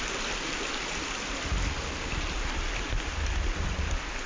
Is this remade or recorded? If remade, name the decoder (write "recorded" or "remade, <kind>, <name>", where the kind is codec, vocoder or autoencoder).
recorded